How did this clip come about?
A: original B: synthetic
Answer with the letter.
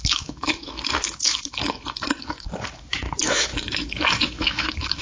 B